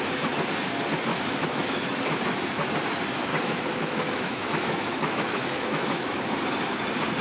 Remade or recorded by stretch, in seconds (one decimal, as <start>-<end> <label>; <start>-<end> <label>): 0.0-1.1 recorded; 1.1-2.1 remade; 2.1-3.3 recorded; 3.3-6.2 remade; 6.2-7.2 recorded